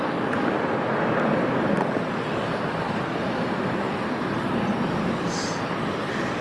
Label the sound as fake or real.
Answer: real